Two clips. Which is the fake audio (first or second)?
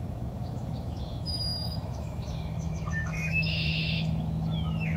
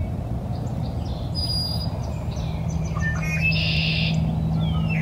first